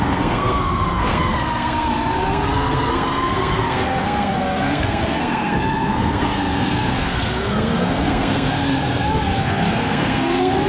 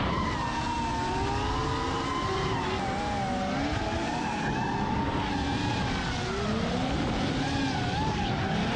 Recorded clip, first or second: second